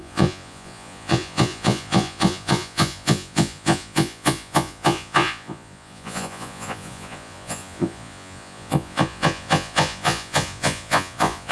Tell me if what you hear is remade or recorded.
remade